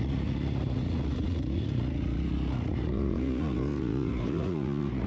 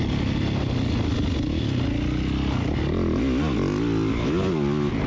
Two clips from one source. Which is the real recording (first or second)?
second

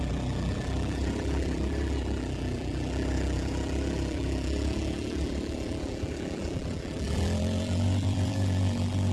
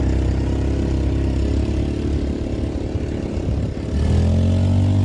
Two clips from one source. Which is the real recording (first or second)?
second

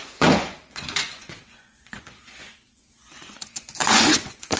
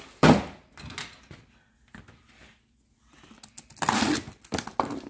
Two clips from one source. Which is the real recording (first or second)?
second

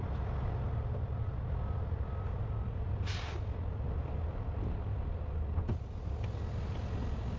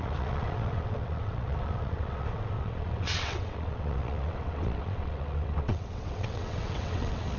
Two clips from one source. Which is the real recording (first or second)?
first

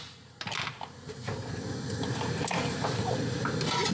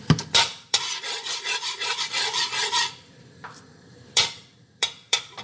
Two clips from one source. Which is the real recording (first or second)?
first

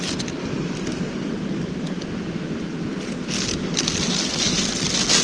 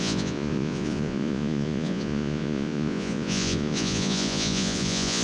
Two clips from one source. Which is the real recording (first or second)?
first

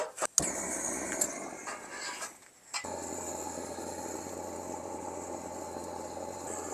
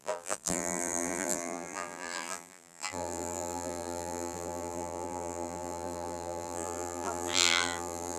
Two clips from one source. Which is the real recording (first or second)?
first